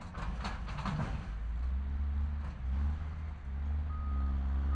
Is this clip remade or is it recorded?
recorded